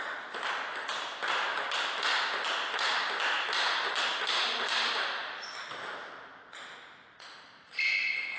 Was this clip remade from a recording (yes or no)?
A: no